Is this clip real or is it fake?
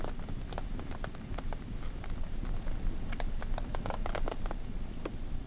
real